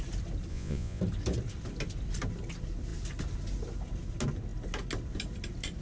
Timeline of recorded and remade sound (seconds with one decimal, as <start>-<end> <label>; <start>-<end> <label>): 0.0-0.5 recorded; 0.5-1.0 remade; 1.0-5.8 recorded